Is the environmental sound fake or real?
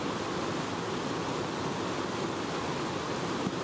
real